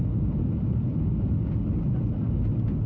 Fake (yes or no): no